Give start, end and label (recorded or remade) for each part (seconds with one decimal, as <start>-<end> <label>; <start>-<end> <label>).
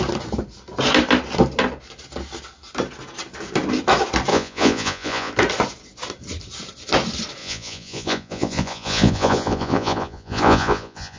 0.0-4.3 recorded; 4.3-5.3 remade; 5.3-7.4 recorded; 7.4-11.2 remade